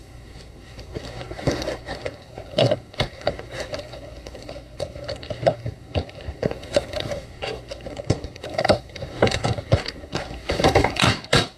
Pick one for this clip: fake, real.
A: fake